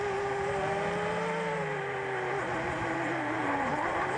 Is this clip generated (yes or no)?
yes